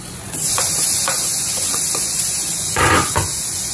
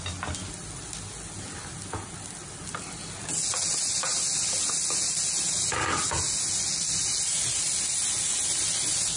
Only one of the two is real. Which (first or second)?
second